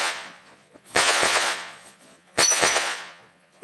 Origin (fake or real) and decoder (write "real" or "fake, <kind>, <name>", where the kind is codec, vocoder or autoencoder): fake, vocoder, Vocos